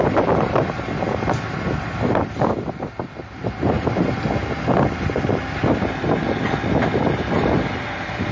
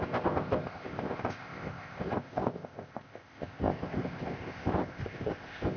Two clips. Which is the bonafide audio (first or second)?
first